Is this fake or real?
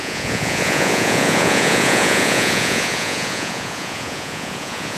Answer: fake